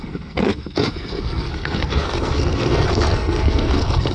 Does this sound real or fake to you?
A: fake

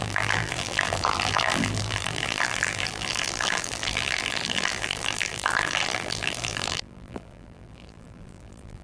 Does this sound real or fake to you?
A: fake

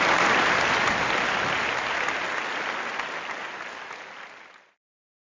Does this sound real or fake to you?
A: real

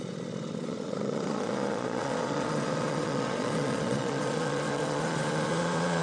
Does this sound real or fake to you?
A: fake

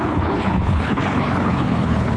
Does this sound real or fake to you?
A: fake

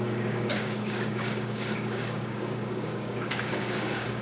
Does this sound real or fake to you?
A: fake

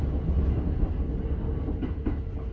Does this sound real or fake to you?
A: real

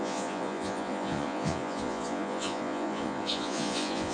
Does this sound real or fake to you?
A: fake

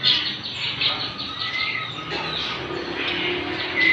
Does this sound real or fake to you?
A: real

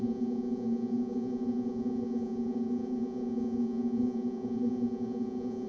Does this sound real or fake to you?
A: fake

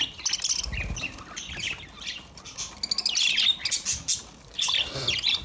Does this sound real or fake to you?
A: real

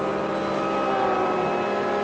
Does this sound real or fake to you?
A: real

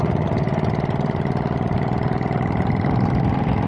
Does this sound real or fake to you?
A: real